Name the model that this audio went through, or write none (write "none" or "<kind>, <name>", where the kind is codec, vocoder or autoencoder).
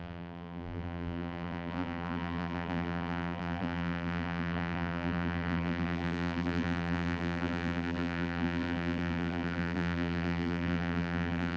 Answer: vocoder, BigVGAN v2